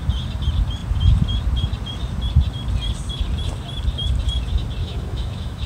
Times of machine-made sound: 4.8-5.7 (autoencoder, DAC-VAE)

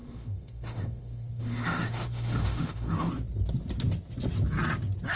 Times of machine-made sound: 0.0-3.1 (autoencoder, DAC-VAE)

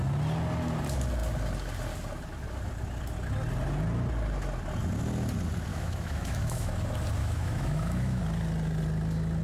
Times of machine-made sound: 5.7-6.7 (autoencoder, DAC-VAE); 7.2-8.2

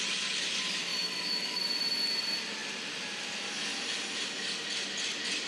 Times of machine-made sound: 0.9-1.6 (autoencoder, DAC-VAE)

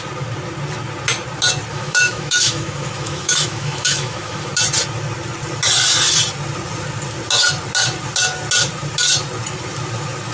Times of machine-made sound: 1.7-4.5 (autoencoder, DAC-VAE)

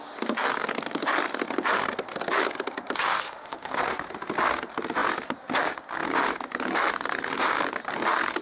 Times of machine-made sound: 3.1-3.7 (autoencoder, DAC-VAE)